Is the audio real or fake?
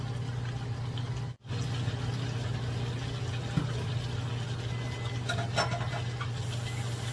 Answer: real